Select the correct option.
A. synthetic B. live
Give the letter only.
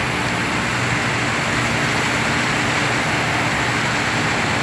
B